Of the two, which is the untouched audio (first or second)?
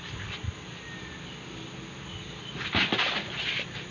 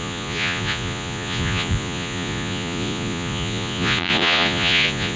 first